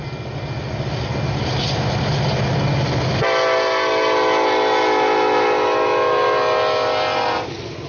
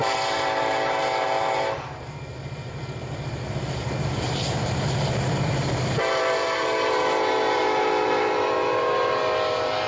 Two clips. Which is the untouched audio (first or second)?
first